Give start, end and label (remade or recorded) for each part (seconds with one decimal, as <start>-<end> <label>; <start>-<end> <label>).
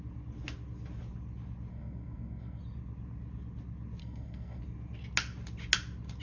0.0-1.7 recorded; 1.7-2.6 remade; 2.6-4.0 recorded; 4.0-4.6 remade; 4.6-6.2 recorded